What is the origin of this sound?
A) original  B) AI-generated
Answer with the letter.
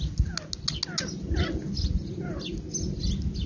A